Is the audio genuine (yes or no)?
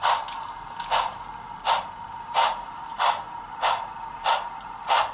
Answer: yes